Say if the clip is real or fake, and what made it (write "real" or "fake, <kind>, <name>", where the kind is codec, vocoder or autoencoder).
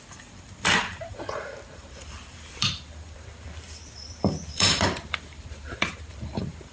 fake, vocoder, BigVGAN v2